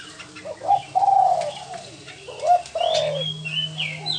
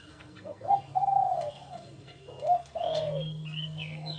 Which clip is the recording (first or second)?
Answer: first